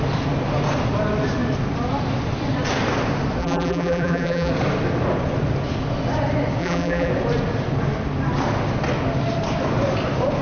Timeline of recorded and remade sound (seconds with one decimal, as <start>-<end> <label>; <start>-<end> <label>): 0.0-3.4 recorded; 3.4-4.5 remade; 4.5-6.6 recorded; 6.6-7.1 remade; 7.1-10.4 recorded